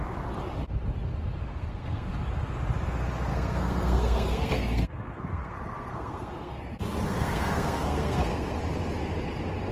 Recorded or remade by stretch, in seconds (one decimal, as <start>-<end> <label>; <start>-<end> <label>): 0.0-1.5 recorded; 1.5-2.1 remade; 2.1-3.3 recorded; 3.3-6.6 remade; 6.6-7.1 recorded; 7.1-8.6 remade; 8.6-9.7 recorded